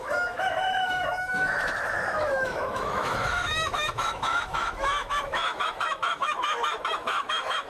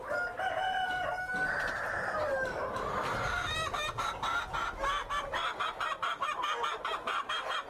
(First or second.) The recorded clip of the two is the second